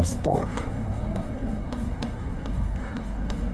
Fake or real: fake